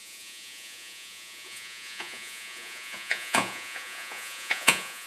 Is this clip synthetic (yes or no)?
yes